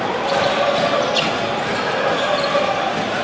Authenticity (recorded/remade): recorded